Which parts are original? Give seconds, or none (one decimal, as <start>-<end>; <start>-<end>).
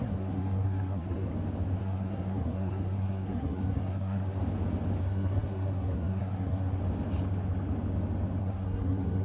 1.3-1.8; 4.4-5.0; 6.8-8.4